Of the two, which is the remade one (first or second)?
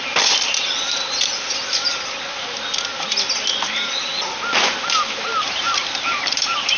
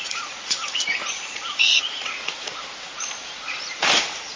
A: second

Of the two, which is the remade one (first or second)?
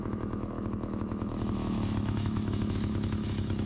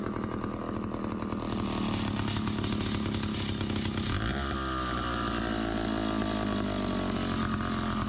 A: first